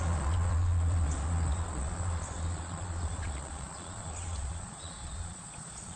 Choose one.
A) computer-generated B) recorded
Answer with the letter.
A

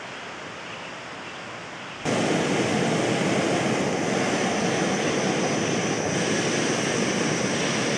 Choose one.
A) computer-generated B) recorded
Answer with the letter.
B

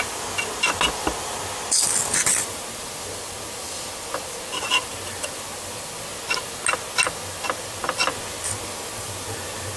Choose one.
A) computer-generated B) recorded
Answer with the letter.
B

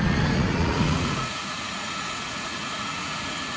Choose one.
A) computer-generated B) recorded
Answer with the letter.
A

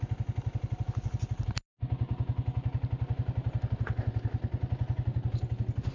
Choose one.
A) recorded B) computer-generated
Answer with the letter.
A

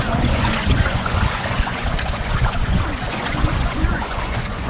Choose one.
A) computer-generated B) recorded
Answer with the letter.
A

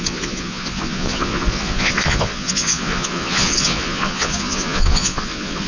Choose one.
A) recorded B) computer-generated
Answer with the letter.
B